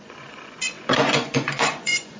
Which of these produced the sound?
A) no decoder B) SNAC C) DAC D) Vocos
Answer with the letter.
D